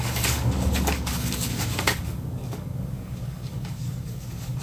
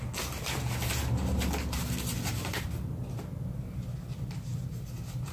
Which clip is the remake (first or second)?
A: first